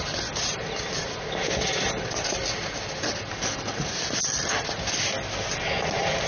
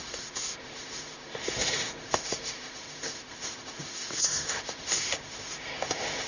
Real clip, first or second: first